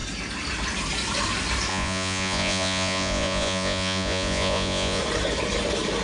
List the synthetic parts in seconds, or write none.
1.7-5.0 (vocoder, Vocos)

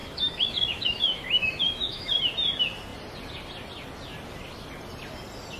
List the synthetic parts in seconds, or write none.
0.0-2.2 (autoencoder, DAC-VAE)

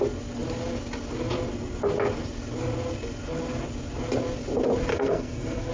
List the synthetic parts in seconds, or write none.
4.9-5.7 (codec, SNAC)

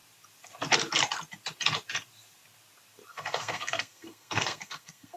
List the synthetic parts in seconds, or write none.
3.1-5.2 (codec, SNAC)

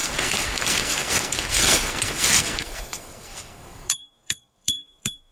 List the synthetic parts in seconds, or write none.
0.0-5.3 (codec, SNAC)

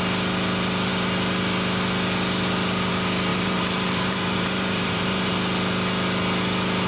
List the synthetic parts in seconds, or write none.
3.3-5.3 (vocoder, BigVGAN v2)

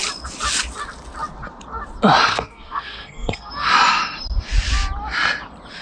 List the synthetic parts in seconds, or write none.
2.3-3.5 (codec, SNAC)